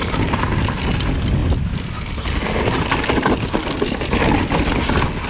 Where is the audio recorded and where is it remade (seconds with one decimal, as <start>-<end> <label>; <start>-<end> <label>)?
0.0-5.3 recorded